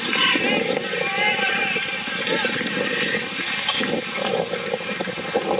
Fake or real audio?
real